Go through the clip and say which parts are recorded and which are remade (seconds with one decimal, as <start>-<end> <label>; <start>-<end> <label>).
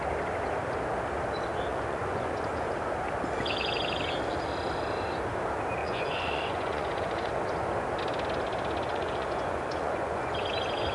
0.0-1.7 recorded; 1.7-2.7 remade; 2.7-5.8 recorded; 5.8-7.3 remade; 7.3-8.9 recorded; 8.9-10.4 remade; 10.4-10.9 recorded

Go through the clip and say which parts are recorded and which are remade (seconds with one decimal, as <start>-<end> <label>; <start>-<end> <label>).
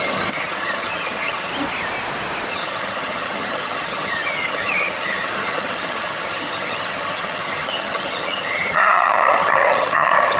0.0-1.5 remade; 1.5-2.5 recorded; 2.5-10.4 remade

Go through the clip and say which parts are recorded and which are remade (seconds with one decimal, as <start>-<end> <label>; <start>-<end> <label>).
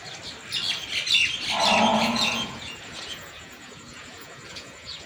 0.0-1.9 recorded; 1.9-5.1 remade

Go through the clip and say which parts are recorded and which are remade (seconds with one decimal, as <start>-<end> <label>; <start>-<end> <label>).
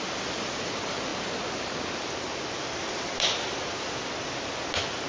0.0-5.1 recorded